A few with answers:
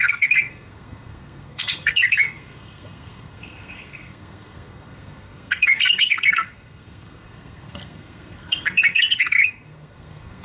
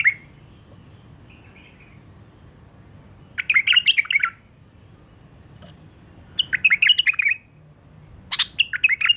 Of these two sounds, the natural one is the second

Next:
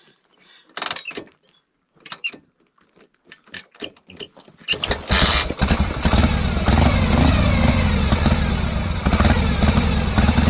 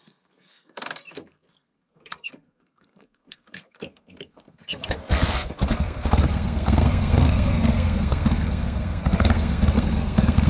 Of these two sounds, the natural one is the first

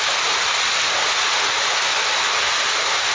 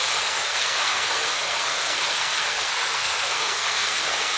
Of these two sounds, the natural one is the first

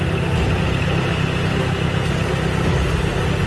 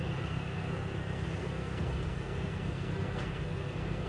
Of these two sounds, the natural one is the first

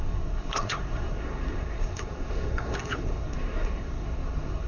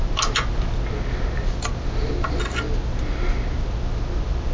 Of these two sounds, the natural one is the second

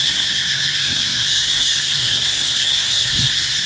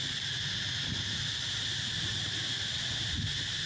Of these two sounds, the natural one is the second